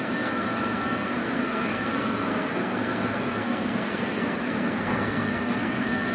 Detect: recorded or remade remade